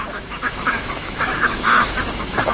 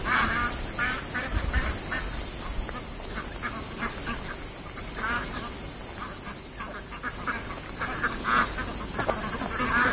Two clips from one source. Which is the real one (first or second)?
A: second